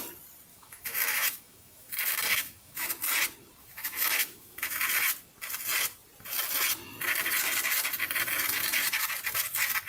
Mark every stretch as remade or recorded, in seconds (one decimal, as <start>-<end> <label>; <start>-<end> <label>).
0.0-0.5 recorded; 0.5-1.9 remade; 1.9-2.3 recorded; 2.3-2.9 remade; 2.9-3.6 recorded; 3.6-4.8 remade; 4.8-9.9 recorded